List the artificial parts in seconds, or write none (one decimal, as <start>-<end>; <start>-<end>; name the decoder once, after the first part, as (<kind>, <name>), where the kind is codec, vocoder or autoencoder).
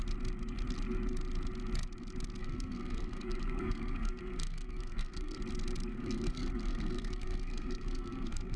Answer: 2.4-5.4 (codec, SNAC); 5.9-8.6